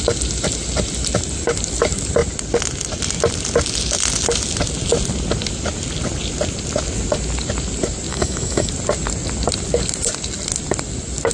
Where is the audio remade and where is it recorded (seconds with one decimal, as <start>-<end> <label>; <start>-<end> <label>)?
0.0-8.1 recorded; 8.1-8.7 remade; 8.7-11.3 recorded